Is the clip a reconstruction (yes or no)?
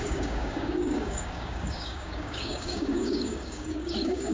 yes